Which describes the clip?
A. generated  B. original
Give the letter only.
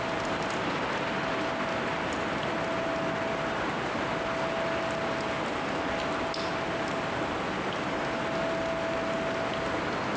B